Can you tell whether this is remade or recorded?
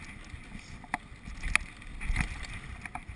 recorded